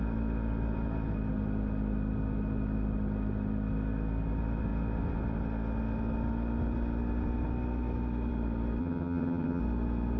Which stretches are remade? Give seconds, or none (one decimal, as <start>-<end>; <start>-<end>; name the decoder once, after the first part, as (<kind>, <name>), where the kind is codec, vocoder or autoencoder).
8.8-9.6 (vocoder, HiFi-GAN)